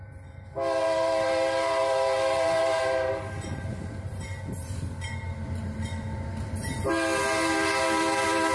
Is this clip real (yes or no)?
no